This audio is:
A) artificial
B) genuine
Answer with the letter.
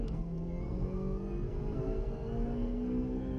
A